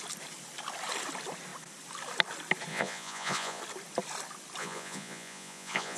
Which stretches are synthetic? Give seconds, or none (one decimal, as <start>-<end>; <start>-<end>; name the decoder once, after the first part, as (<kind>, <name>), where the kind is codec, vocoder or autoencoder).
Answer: 2.7-3.6 (vocoder, Vocos); 4.6-6.0